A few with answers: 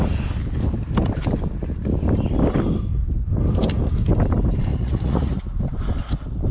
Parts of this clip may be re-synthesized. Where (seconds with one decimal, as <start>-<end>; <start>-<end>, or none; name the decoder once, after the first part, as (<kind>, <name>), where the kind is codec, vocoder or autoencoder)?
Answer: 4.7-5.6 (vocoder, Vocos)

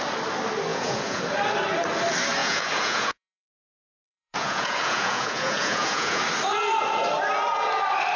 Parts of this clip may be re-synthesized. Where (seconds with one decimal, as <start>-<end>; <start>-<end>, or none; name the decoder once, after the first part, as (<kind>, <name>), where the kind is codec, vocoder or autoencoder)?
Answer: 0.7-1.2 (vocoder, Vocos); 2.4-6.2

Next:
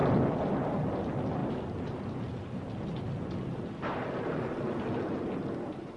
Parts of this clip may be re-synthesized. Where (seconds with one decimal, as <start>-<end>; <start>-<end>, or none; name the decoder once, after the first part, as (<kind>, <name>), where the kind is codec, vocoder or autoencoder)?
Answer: none